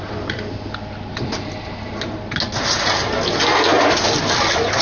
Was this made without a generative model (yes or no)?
yes